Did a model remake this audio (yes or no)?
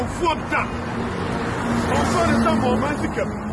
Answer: no